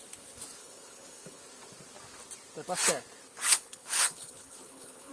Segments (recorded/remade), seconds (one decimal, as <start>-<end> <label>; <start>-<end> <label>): 0.0-0.6 recorded; 0.6-1.4 remade; 1.4-3.5 recorded; 3.5-5.1 remade